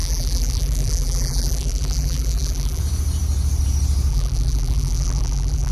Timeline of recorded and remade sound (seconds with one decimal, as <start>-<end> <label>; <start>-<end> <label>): 0.0-2.8 remade; 2.8-4.1 recorded; 4.1-5.7 remade